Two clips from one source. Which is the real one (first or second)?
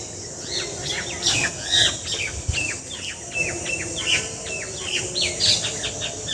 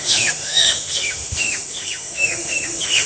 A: first